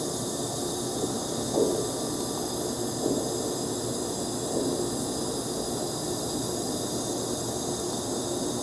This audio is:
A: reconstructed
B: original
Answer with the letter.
B